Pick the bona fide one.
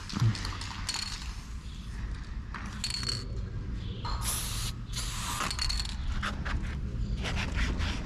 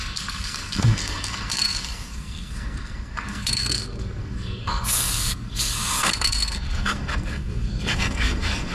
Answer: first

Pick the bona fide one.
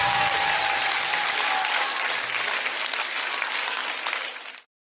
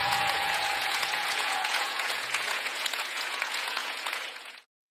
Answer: first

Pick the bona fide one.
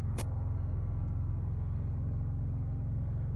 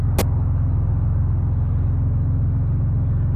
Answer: second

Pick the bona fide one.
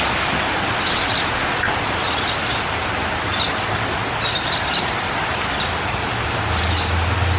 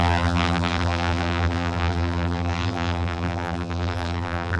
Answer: first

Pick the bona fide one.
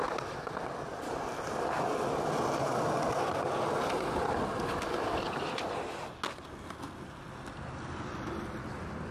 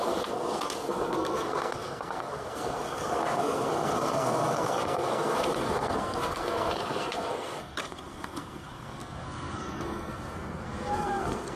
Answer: first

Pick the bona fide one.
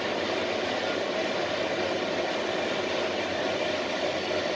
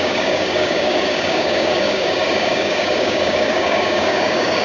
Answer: first